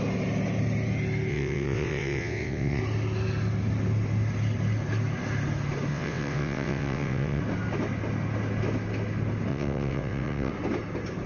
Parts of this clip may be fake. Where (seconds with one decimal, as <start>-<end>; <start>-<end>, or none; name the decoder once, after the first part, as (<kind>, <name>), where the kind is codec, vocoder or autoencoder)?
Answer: 1.3-2.8 (vocoder, WaveNeXt); 5.9-7.4; 9.5-10.5